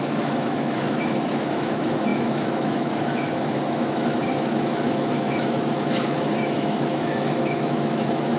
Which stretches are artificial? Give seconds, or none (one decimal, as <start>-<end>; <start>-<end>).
0.0-8.4